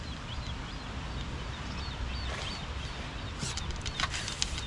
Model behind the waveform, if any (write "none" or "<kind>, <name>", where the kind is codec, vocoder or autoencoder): none